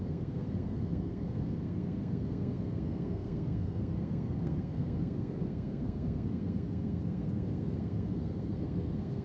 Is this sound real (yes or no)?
no